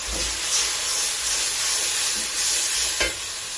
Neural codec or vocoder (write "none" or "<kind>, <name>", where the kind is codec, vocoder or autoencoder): none